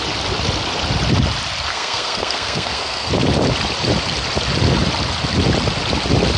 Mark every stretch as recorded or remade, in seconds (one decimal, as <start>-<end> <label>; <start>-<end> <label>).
0.0-1.7 recorded; 1.7-3.1 remade; 3.1-6.4 recorded